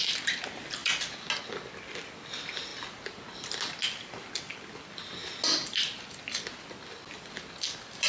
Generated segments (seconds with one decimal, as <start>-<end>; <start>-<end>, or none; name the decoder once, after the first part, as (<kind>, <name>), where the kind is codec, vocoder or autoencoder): none